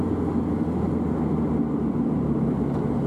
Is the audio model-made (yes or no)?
no